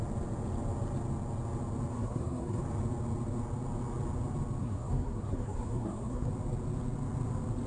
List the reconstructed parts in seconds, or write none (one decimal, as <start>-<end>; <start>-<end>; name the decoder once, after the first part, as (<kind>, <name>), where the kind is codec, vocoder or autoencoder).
1.9-2.6 (codec, SNAC); 4.6-6.3